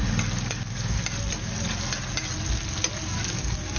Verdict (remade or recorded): recorded